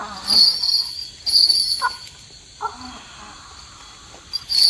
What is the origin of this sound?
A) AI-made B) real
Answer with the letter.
B